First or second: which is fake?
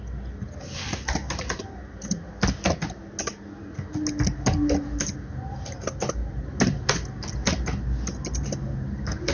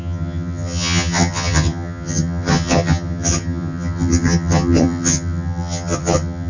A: second